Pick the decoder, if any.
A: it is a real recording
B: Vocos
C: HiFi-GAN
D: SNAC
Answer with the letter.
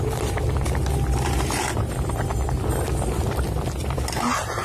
A